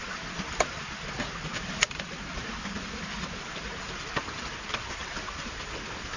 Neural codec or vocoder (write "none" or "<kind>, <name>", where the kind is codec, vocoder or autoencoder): vocoder, BigVGAN v2